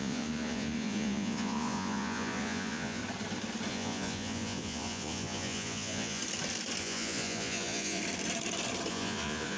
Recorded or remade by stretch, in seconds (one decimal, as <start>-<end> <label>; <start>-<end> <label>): 0.0-3.0 remade; 3.0-3.7 recorded; 3.7-6.2 remade; 6.2-6.8 recorded; 6.8-8.0 remade; 8.0-8.9 recorded; 8.9-9.6 remade